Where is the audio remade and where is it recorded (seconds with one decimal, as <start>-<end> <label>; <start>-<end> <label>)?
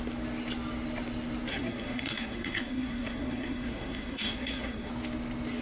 0.0-1.5 recorded; 1.5-4.9 remade; 4.9-5.6 recorded